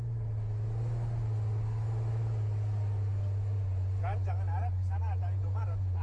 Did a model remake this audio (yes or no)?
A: no